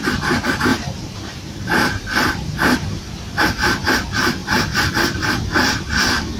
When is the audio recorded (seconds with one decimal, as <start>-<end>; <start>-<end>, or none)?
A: 0.0-0.7; 3.9-4.4; 5.9-6.4